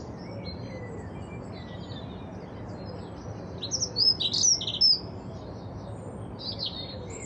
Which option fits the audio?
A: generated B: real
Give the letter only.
B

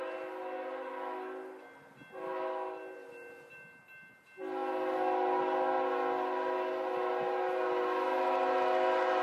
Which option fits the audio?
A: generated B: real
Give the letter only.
B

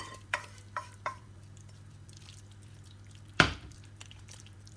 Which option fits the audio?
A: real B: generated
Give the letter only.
B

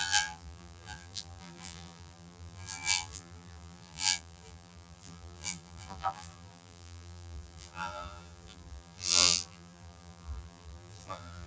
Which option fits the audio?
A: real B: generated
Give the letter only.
B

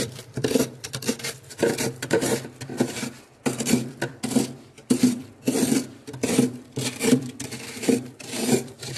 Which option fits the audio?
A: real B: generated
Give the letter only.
B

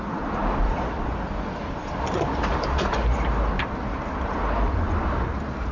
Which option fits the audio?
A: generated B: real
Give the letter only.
B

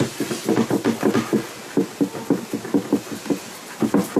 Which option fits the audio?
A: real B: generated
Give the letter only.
A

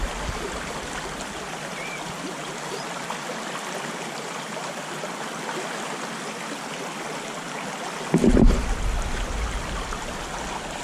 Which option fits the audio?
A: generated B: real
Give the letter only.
B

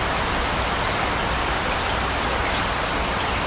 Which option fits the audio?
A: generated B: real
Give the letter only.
B